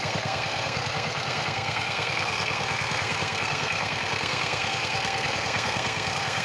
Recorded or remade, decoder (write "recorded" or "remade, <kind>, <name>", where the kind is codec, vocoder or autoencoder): remade, codec, SNAC